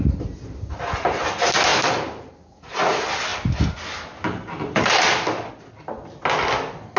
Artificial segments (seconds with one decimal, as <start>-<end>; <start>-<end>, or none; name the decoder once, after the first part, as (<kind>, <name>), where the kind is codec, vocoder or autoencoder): none